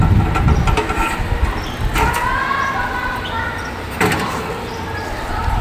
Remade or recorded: recorded